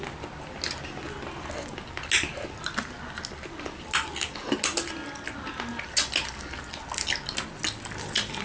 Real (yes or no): yes